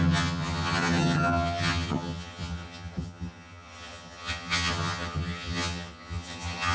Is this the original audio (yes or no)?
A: no